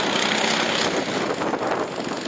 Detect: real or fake real